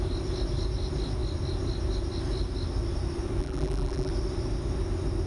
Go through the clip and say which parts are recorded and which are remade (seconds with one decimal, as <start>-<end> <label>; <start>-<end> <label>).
0.0-3.4 recorded; 3.4-4.1 remade; 4.1-5.3 recorded